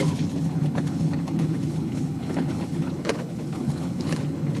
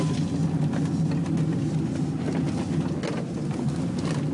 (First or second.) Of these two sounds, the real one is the second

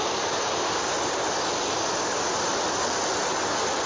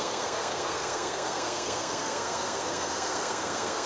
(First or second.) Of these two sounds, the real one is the first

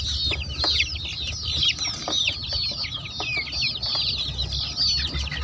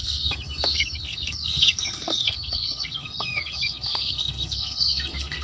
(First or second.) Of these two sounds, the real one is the first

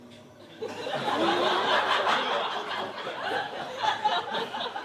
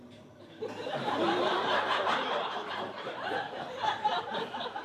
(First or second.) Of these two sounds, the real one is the first